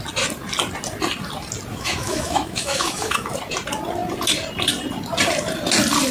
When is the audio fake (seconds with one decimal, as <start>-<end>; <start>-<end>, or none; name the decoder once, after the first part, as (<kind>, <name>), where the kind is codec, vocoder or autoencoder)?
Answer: 1.7-3.3 (autoencoder, DAC-VAE)